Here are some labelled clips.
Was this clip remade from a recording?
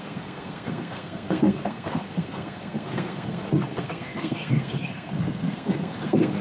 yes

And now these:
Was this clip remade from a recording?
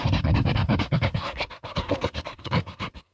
yes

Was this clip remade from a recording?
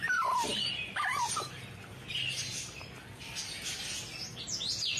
no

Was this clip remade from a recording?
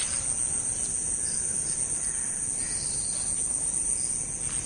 no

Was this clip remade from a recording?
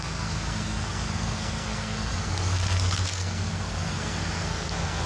yes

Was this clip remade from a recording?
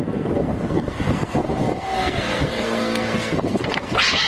yes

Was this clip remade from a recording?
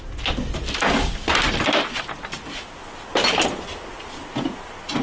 no